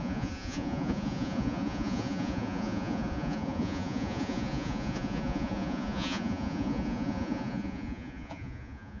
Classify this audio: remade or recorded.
remade